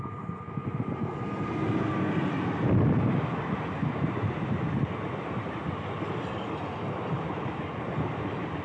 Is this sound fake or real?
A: real